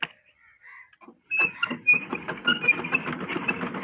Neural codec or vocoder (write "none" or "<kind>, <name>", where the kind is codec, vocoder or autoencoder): none